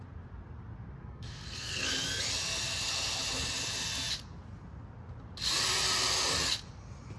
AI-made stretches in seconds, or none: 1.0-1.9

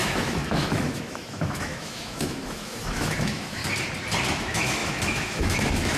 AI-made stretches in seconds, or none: 0.0-3.6; 4.3-6.0